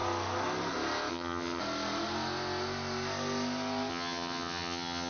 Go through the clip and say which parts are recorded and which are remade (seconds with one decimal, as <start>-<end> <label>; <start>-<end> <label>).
0.0-1.1 recorded; 1.1-1.6 remade; 1.6-3.9 recorded; 3.9-5.1 remade